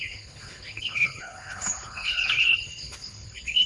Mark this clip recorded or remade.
remade